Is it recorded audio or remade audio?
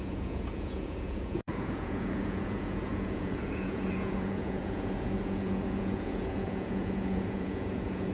remade